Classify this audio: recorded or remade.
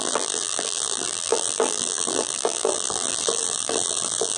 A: remade